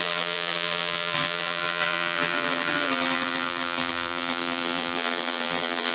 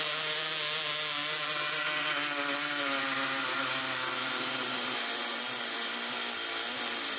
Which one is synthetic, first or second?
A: first